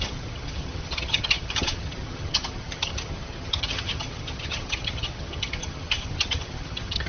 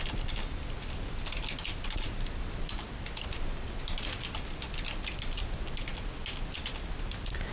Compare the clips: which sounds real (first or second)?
second